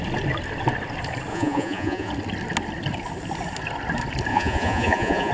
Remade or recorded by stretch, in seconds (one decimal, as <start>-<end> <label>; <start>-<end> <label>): 0.0-1.3 recorded; 1.3-2.1 remade; 2.1-4.3 recorded; 4.3-5.3 remade